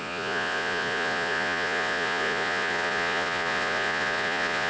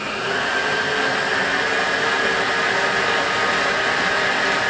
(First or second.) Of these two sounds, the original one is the second